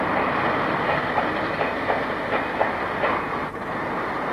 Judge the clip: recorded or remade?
recorded